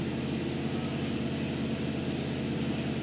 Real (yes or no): yes